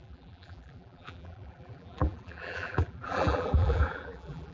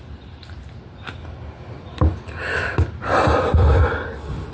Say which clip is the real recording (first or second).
second